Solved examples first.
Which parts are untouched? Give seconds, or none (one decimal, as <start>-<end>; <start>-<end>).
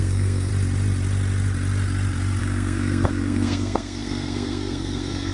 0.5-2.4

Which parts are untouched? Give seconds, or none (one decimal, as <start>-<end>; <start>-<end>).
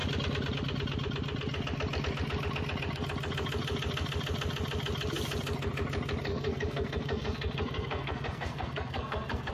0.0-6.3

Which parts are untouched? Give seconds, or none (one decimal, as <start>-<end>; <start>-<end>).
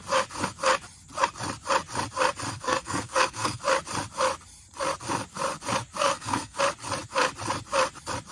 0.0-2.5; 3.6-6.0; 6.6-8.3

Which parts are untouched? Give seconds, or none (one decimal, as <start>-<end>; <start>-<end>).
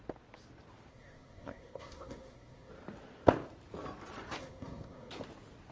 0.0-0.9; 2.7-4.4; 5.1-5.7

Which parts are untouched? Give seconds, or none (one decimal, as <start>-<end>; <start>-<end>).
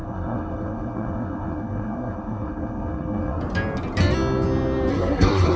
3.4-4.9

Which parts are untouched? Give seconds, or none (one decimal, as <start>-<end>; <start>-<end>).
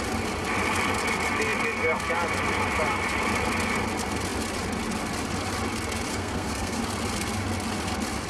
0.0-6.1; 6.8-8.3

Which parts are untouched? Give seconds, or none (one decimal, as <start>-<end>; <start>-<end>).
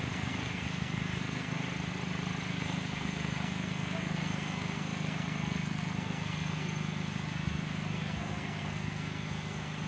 1.6-2.5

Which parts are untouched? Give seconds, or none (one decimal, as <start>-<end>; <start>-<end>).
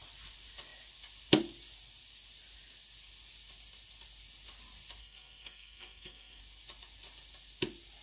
0.0-5.0; 6.4-8.0